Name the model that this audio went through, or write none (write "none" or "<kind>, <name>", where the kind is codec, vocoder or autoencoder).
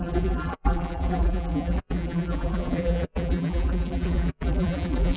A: vocoder, BigVGAN v2